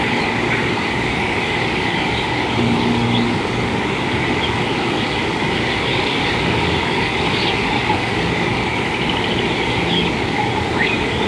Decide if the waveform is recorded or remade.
remade